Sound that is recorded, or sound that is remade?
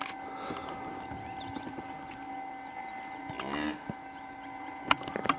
recorded